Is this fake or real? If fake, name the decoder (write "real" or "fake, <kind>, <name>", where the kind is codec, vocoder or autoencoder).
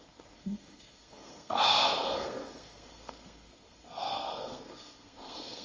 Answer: fake, codec, SNAC